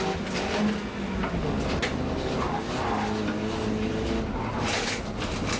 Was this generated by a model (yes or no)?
no